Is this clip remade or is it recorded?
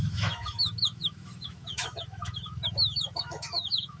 remade